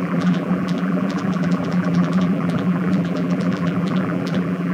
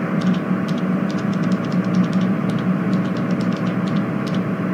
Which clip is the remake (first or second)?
first